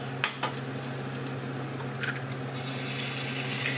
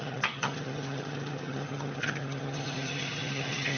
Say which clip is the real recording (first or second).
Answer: first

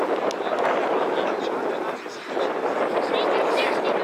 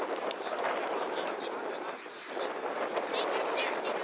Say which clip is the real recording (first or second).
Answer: first